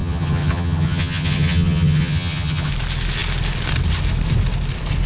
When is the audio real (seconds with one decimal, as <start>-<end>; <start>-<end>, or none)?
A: 2.7-5.1